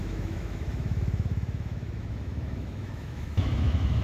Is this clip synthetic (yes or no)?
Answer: yes